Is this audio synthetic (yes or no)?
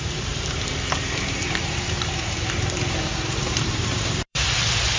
yes